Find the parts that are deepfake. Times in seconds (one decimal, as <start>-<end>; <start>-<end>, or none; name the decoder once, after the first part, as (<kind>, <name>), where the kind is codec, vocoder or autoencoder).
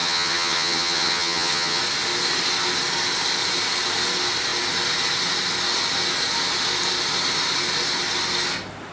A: 0.0-1.8 (vocoder, HiFi-GAN)